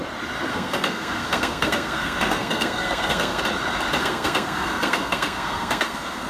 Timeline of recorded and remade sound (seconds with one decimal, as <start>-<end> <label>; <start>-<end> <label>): 0.0-0.5 recorded; 0.5-3.4 remade; 3.4-4.0 recorded; 4.0-6.3 remade